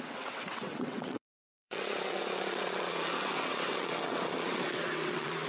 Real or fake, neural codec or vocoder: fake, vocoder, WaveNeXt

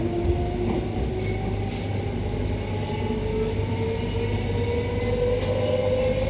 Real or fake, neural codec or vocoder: real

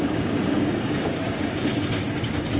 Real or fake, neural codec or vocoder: fake, codec, DAC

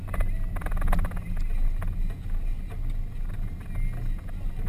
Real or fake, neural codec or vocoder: real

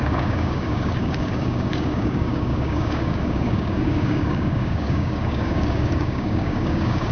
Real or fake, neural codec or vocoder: fake, codec, DAC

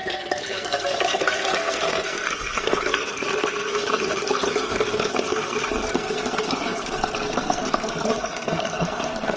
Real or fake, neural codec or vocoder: fake, codec, SNAC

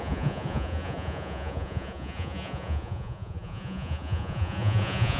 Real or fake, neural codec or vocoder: fake, vocoder, Vocos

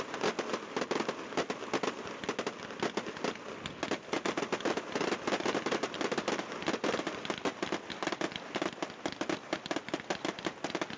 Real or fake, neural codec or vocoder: real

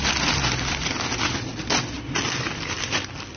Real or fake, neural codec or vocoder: real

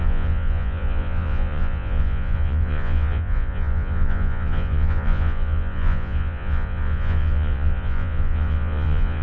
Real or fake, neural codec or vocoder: fake, vocoder, Vocos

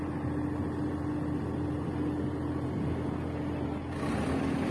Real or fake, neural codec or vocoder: real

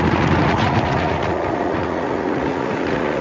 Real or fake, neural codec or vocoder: fake, vocoder, Vocos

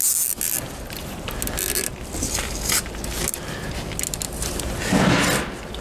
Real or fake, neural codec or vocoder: real